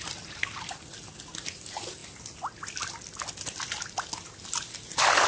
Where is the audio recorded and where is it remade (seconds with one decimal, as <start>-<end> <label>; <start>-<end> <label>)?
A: 0.0-5.3 recorded